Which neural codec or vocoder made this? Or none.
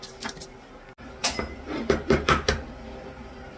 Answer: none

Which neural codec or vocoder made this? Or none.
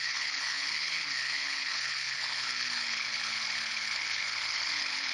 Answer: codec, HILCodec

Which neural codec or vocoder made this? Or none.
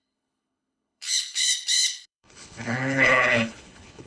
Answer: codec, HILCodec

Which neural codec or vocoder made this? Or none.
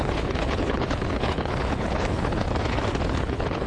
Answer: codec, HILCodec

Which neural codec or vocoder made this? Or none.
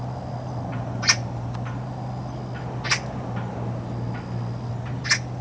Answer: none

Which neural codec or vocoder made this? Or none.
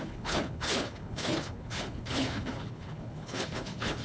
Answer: codec, HILCodec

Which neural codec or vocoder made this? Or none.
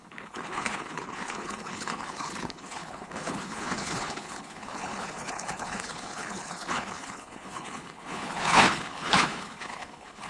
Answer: codec, HILCodec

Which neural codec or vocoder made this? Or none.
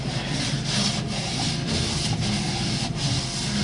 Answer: none